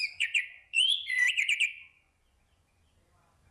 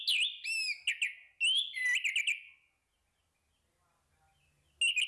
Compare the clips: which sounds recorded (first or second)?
second